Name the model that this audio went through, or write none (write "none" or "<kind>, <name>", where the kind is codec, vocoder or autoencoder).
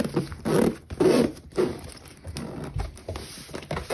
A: none